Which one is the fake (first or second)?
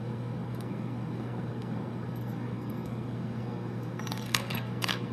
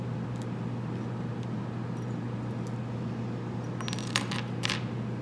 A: first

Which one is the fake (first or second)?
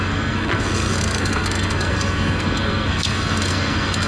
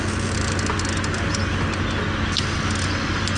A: first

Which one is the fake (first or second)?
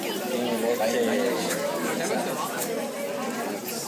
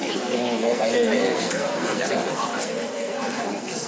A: second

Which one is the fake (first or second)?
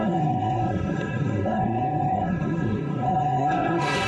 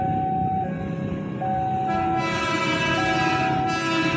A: first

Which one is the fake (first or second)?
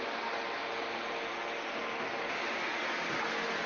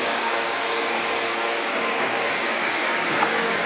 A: second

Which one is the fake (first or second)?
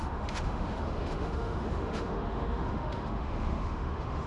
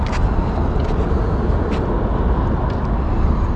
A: first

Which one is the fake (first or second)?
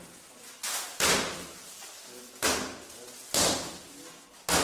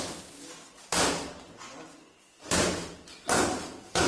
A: second